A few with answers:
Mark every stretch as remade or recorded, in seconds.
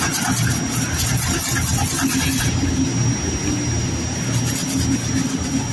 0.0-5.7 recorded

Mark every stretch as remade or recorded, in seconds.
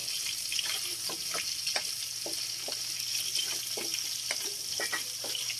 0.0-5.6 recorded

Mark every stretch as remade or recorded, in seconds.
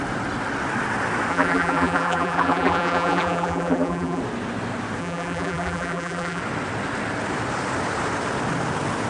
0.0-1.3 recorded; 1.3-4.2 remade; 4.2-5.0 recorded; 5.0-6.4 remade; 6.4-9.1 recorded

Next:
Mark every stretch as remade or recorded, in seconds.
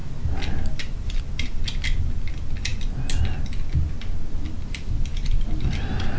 0.0-6.2 recorded